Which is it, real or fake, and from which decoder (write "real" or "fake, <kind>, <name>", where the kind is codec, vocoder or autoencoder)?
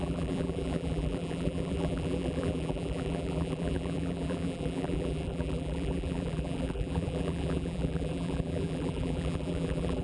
fake, vocoder, BigVGAN v2